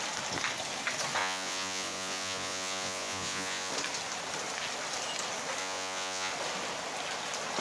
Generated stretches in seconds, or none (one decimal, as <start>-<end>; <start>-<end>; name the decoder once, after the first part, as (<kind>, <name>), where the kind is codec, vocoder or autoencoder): 1.2-3.7 (vocoder, Vocos); 5.6-6.3